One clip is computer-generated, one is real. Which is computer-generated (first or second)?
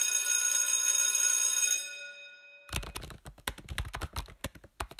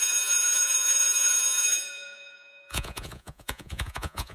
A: second